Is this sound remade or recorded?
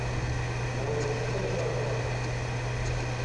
recorded